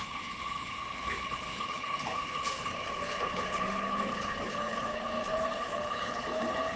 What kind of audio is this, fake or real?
fake